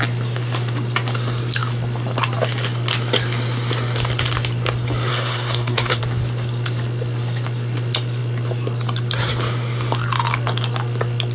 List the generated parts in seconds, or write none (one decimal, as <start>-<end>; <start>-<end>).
5.1-6.0